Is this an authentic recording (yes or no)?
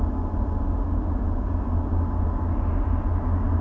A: yes